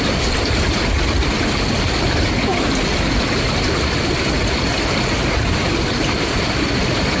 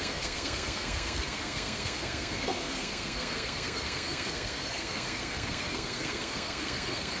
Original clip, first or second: first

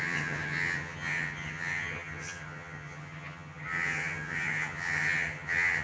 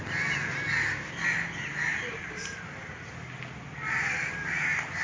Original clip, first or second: second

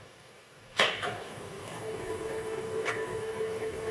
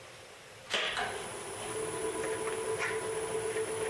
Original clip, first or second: second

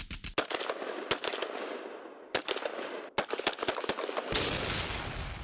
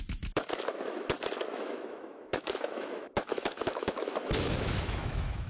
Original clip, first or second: first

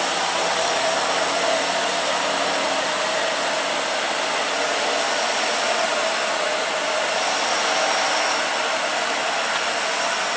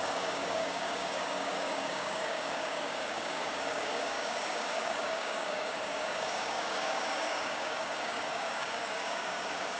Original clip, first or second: first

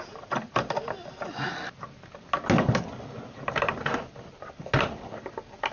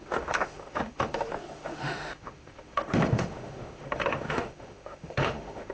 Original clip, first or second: first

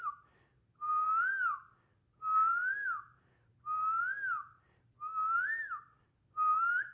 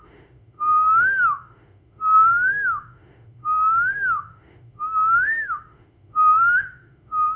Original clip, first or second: first